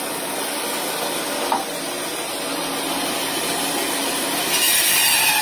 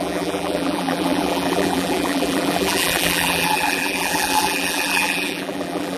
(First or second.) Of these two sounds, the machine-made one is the second